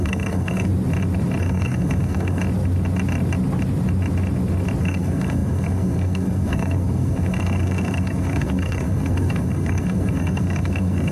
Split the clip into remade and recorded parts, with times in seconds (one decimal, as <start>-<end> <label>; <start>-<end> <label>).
0.0-0.7 remade; 0.7-1.4 recorded; 1.4-2.4 remade; 2.4-4.8 recorded; 4.8-11.1 remade